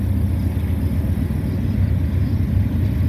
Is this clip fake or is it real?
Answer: real